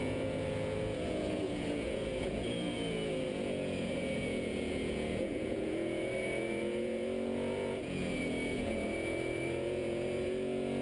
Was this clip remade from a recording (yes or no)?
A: yes